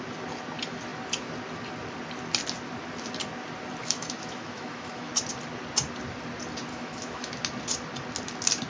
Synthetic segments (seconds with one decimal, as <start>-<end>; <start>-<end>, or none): 3.8-5.1; 6.7-7.3